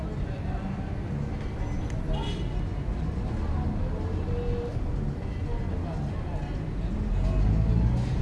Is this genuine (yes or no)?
yes